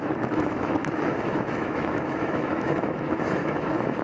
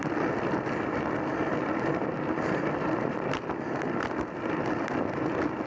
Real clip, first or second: second